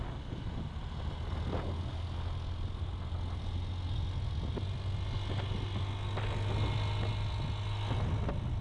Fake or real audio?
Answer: real